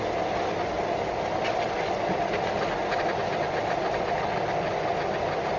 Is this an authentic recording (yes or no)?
yes